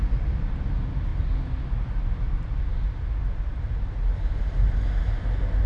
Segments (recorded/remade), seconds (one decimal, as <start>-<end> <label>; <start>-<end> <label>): 0.0-5.7 recorded